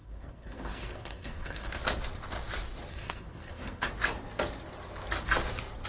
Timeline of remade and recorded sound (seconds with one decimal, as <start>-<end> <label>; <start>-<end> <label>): 0.0-1.8 remade; 1.8-2.9 recorded; 2.9-3.9 remade; 3.9-5.9 recorded